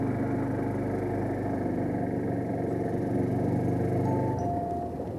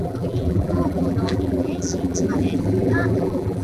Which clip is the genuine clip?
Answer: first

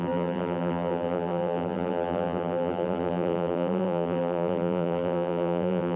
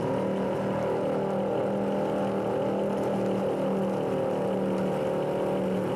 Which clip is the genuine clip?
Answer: second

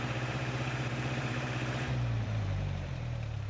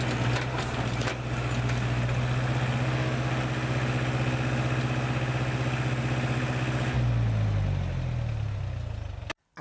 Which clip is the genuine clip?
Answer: second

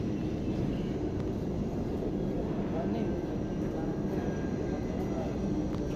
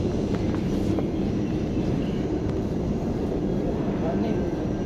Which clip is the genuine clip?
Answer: first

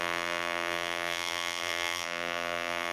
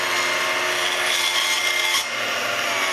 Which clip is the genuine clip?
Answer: second